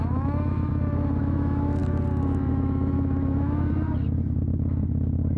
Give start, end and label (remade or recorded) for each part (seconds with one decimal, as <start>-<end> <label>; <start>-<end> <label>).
0.0-0.7 remade; 0.7-1.2 recorded; 1.2-1.8 remade; 1.8-2.5 recorded; 2.5-3.7 remade; 3.7-5.4 recorded